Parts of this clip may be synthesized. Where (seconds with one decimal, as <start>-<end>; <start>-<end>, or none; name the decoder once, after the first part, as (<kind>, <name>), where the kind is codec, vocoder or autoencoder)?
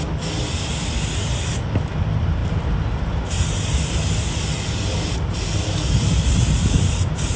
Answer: none